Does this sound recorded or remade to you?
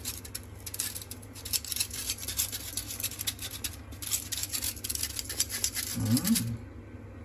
recorded